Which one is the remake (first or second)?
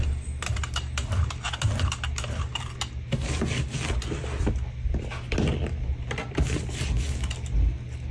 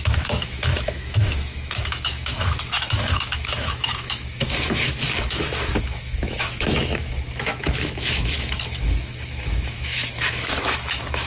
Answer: second